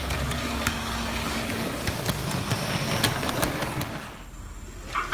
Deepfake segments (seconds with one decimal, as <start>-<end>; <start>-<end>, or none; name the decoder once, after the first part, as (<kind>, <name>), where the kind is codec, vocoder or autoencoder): 0.0-2.2 (codec, DAC)